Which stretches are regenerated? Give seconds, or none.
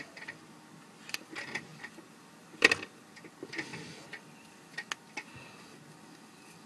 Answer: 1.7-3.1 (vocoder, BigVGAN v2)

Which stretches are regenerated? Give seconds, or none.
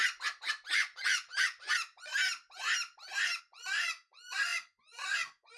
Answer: 0.7-2.1 (vocoder, Vocos); 3.4-5.6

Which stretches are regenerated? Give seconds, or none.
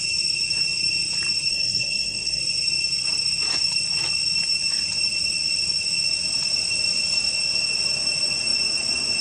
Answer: 1.5-2.4 (codec, SNAC)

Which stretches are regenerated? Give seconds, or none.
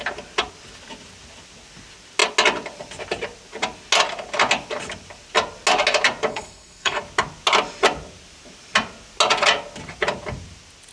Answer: 6.3-7.0 (codec, SNAC)